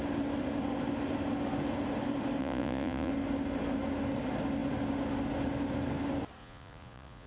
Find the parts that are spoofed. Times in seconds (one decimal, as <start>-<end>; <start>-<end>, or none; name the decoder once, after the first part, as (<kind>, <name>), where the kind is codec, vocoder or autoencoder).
2.4-3.1 (vocoder, Vocos); 6.4-7.3